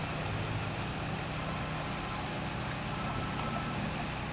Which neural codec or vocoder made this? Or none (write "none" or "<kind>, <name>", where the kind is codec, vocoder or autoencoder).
none